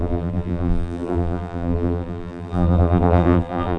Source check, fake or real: fake